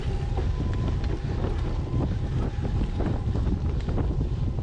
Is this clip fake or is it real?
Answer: real